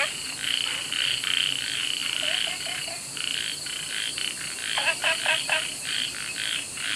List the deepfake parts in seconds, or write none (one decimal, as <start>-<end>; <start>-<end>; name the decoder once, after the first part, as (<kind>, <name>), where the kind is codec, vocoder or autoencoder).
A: 2.0-4.1 (vocoder, BigVGAN v2); 4.6-6.1